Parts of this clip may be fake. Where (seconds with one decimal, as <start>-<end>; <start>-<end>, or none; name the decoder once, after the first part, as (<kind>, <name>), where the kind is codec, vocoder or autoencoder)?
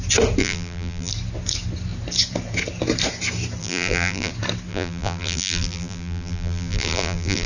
0.4-1.1 (vocoder, BigVGAN v2); 3.6-4.3; 4.7-7.5